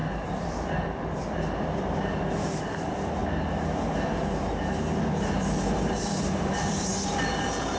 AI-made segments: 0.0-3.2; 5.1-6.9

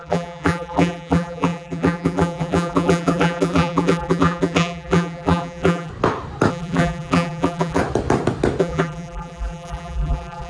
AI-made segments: 0.0-5.9; 6.5-7.8; 8.6-10.5

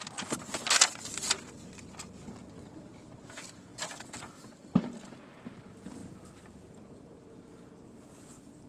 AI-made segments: 6.0-6.6

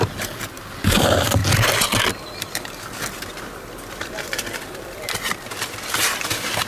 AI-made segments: 0.0-1.4; 3.1-6.7

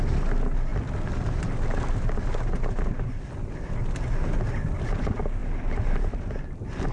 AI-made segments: none

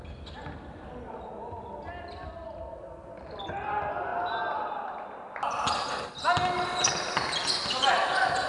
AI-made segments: none

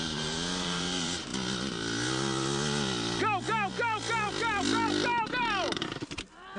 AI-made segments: 0.0-1.3; 5.3-6.6